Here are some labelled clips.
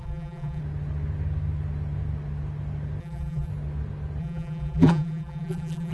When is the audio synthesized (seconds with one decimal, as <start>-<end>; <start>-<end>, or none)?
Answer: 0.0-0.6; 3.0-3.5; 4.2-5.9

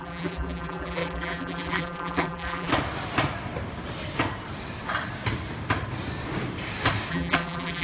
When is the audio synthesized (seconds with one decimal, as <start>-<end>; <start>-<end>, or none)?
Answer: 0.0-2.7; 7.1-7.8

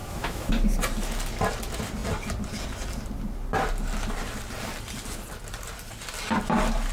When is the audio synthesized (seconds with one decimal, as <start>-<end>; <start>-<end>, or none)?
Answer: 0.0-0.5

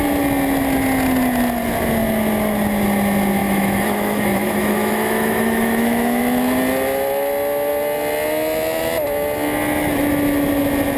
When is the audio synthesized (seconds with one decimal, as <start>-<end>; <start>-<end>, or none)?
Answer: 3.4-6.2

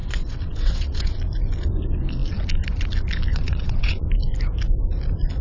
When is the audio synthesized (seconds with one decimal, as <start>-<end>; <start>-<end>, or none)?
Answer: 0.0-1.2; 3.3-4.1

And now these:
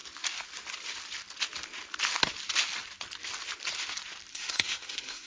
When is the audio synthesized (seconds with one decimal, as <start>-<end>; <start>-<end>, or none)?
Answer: 4.3-5.3

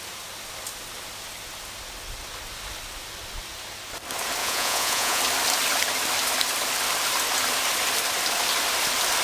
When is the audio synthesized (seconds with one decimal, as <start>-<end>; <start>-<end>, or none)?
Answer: 4.4-5.2

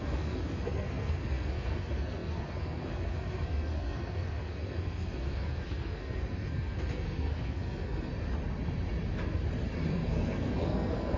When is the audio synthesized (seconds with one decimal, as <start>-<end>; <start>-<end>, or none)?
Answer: 0.0-8.1; 9.9-11.2